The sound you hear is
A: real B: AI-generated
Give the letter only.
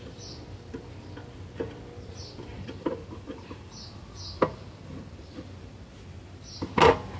A